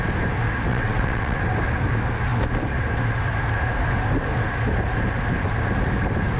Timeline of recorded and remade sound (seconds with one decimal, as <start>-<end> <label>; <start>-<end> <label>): 0.0-0.7 recorded; 0.7-1.4 remade; 1.4-6.4 recorded